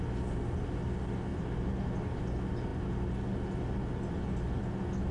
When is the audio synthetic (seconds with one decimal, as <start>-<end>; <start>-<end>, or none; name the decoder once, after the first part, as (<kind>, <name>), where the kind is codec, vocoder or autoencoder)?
none